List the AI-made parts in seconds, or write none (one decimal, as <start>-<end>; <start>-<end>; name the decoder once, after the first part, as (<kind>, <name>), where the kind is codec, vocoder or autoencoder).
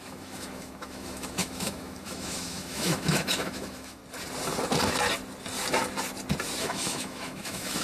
0.0-4.0 (autoencoder, DAC-VAE); 6.6-7.8